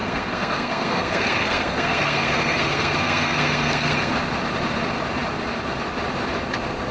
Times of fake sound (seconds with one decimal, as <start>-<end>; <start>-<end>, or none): 0.0-4.1